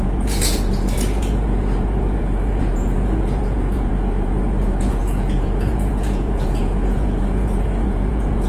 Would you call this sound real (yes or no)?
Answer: no